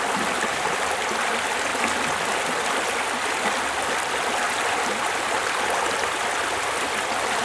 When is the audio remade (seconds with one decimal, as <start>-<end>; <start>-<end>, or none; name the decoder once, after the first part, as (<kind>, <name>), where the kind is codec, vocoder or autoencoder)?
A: none